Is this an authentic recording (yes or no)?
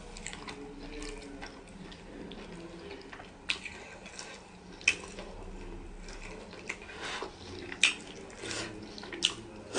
yes